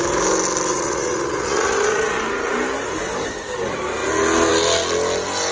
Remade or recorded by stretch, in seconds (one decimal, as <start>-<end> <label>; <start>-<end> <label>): 0.0-0.7 recorded; 0.7-2.2 remade; 2.2-5.5 recorded